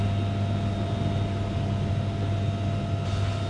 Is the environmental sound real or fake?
real